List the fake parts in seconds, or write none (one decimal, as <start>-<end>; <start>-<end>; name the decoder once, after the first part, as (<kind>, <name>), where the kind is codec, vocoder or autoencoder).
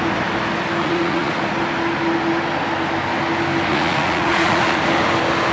0.8-1.4 (vocoder, Vocos); 3.7-4.8